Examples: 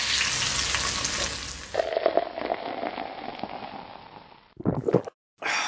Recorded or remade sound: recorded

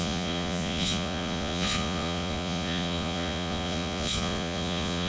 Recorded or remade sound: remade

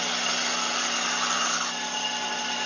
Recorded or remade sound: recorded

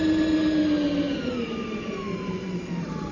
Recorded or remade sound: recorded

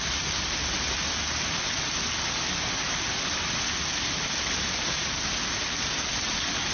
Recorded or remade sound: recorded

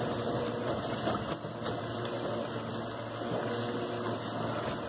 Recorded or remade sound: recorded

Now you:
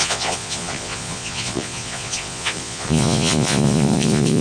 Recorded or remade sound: remade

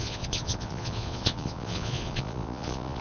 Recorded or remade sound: remade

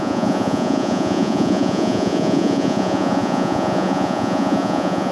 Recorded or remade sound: remade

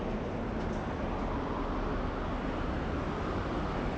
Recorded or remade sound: recorded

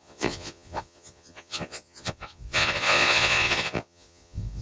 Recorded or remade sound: remade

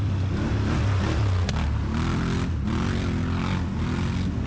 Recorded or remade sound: recorded